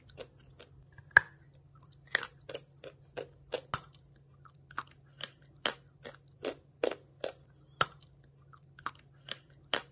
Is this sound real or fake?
real